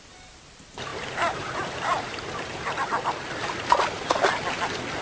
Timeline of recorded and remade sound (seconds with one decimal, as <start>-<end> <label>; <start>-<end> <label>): 0.0-0.9 recorded; 0.9-2.6 remade; 2.6-5.0 recorded